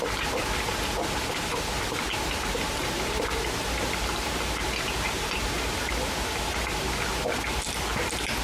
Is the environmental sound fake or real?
real